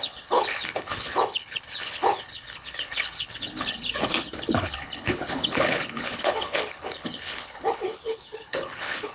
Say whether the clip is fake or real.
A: fake